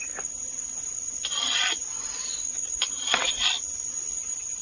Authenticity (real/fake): fake